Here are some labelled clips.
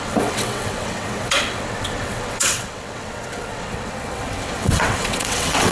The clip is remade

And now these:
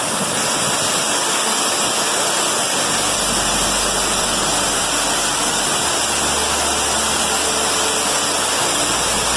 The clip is recorded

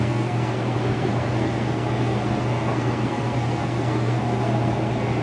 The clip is remade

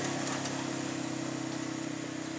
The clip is recorded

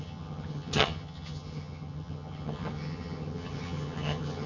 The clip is remade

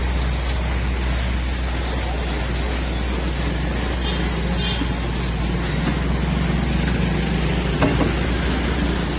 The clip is recorded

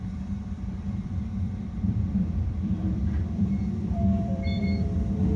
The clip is remade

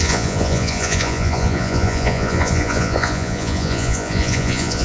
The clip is remade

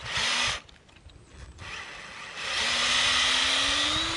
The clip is recorded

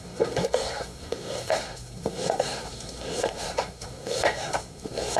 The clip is remade